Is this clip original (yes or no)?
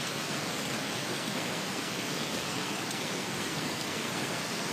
no